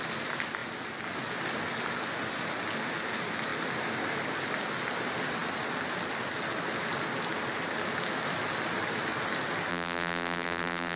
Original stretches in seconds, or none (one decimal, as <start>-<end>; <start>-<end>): 0.0-9.7